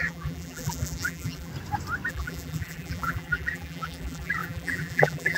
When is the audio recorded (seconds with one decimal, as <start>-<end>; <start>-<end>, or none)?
1.5-2.1